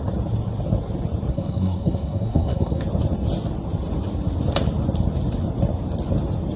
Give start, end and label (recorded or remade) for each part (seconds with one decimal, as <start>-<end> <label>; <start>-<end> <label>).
0.0-1.3 recorded; 1.3-2.8 remade; 2.8-6.6 recorded

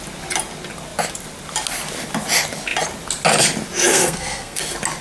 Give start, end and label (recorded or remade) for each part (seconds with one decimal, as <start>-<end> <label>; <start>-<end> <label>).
0.0-3.9 recorded; 3.9-4.6 remade; 4.6-5.0 recorded

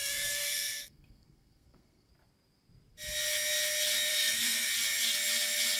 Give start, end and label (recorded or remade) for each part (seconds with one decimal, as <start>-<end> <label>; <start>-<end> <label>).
0.0-2.1 remade; 2.1-4.1 recorded; 4.1-4.7 remade; 4.7-5.8 recorded

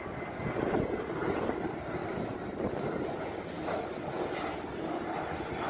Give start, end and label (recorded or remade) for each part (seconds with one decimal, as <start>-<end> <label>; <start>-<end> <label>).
0.0-5.7 recorded

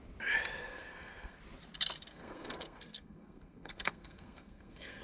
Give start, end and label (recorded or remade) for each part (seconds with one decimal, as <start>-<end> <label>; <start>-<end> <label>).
0.0-0.6 recorded; 0.6-1.4 remade; 1.4-2.1 recorded; 2.1-5.0 remade

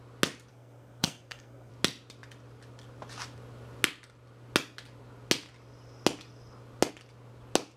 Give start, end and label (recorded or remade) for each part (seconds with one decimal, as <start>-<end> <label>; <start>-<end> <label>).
0.0-0.5 recorded; 0.5-1.7 remade; 1.7-7.8 recorded

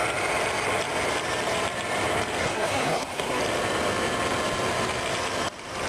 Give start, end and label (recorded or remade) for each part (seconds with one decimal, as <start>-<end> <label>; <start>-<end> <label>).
0.0-2.4 recorded; 2.4-3.4 remade; 3.4-5.9 recorded